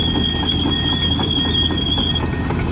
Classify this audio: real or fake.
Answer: real